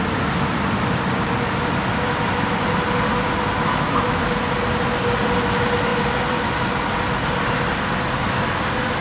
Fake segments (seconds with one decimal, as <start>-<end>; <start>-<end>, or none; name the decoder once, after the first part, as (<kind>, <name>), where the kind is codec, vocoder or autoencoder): 3.6-4.3 (autoencoder, DAC-VAE)